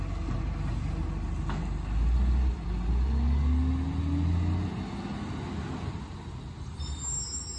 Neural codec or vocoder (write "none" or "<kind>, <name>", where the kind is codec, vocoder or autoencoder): none